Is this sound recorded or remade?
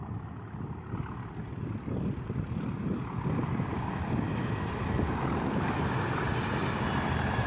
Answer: recorded